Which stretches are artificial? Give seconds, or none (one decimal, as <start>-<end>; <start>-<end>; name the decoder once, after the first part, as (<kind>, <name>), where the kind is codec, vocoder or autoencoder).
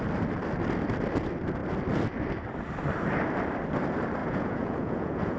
4.2-5.4 (vocoder, Vocos)